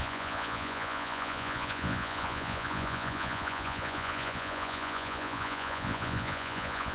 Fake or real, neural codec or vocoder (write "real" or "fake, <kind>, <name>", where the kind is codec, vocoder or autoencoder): fake, vocoder, Vocos